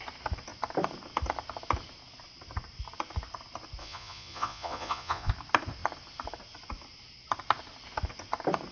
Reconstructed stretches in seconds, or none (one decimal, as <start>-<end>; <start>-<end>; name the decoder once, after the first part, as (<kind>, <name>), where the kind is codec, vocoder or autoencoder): 3.8-5.3 (vocoder, Vocos)